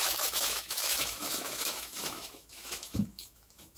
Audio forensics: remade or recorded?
remade